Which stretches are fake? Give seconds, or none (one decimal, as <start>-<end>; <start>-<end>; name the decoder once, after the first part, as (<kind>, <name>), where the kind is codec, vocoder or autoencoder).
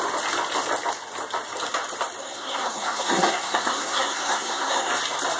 2.2-4.9 (codec, SNAC)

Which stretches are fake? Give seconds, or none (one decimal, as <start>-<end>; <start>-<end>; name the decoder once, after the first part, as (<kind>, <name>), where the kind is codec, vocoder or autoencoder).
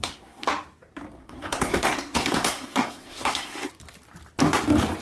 0.0-0.5 (codec, SNAC); 1.2-3.7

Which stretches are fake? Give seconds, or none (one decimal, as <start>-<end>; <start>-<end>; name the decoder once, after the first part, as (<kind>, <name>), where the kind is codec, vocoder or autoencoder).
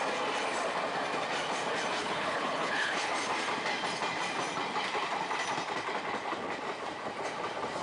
2.0-3.1 (codec, HILCodec)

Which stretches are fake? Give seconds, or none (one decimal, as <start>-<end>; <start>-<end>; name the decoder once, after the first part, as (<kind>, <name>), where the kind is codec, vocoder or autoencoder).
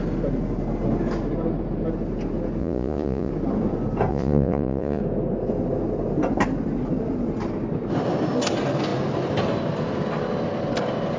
2.6-3.3 (vocoder, Vocos); 4.1-5.0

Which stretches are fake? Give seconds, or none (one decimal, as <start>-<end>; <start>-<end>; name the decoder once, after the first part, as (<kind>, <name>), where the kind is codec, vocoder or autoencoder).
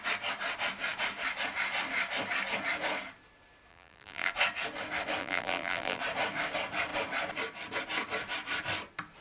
3.7-4.3 (vocoder, BigVGAN v2); 5.2-6.0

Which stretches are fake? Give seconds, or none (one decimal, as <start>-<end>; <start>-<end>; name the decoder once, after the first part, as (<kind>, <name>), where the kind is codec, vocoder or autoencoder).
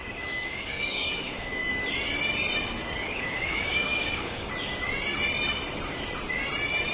0.0-1.7 (codec, DAC); 3.0-4.5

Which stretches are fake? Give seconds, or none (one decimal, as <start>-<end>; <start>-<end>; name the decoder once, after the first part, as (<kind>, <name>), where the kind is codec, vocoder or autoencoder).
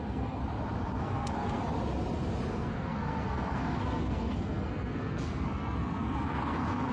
0.0-0.4 (codec, SNAC); 1.0-1.6; 2.5-6.9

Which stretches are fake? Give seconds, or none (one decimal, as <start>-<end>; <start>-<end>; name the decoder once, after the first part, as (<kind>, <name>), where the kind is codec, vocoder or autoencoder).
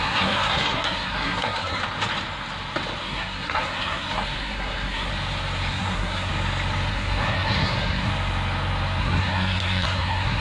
0.0-1.8 (codec, SNAC); 3.0-5.1; 5.7-6.3; 6.9-8.1; 9.0-10.4